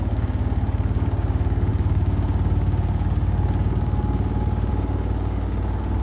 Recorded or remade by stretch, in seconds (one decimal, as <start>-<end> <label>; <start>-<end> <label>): 0.0-6.0 remade